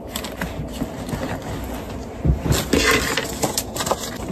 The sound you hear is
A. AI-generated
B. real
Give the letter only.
B